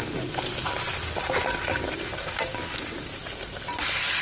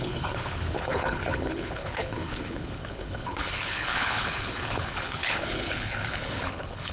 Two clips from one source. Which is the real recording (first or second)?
first